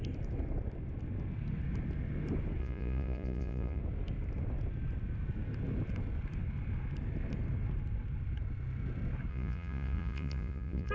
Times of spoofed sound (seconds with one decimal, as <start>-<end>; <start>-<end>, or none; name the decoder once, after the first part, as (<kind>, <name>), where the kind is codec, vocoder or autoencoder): 2.6-3.8 (vocoder, Vocos); 9.3-10.9